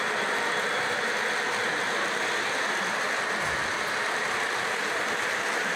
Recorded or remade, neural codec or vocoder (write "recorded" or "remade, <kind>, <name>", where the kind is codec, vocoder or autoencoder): recorded